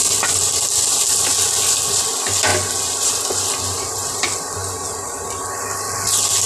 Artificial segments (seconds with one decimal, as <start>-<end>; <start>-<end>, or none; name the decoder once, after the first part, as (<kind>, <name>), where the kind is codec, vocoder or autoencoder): none